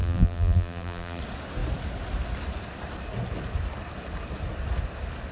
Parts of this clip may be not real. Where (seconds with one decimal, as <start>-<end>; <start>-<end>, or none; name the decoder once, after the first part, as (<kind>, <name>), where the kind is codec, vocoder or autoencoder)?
0.0-1.2 (vocoder, BigVGAN v2)

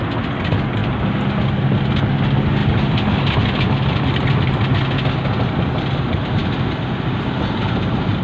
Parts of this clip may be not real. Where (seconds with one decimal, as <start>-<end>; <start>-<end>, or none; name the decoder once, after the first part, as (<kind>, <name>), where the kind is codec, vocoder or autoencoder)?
none

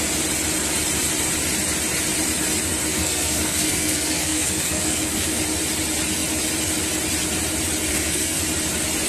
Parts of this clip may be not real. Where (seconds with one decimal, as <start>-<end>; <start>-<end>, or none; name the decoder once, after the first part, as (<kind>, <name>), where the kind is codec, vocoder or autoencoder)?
2.9-5.4 (codec, SNAC); 7.9-8.4

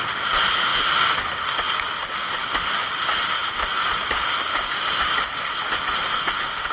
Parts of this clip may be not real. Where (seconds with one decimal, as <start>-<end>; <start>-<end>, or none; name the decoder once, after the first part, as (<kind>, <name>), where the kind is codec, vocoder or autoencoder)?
none